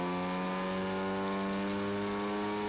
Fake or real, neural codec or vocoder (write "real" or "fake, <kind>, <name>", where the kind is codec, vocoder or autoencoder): real